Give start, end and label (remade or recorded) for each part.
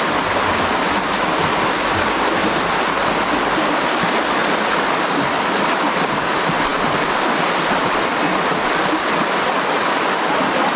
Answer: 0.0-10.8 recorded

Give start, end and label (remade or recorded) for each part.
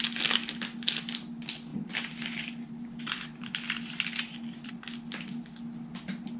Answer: 0.0-1.7 recorded; 1.7-4.7 remade; 4.7-6.4 recorded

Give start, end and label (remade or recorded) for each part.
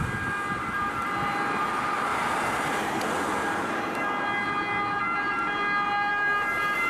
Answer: 0.0-6.9 recorded